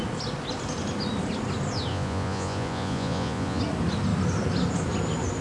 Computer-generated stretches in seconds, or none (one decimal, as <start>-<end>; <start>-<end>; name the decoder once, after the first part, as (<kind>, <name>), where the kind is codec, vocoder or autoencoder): 1.9-3.6 (vocoder, Vocos)